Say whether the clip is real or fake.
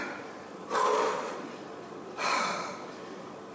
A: fake